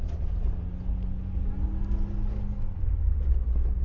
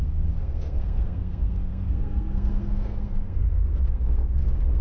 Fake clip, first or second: second